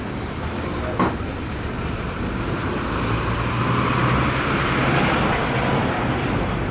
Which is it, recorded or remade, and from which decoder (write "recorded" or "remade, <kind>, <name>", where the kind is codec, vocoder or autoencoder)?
recorded